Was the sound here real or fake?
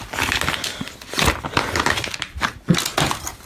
real